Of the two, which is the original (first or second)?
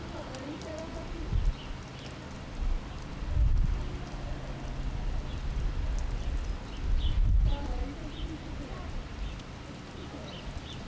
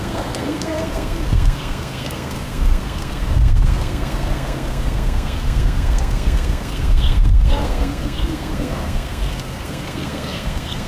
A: first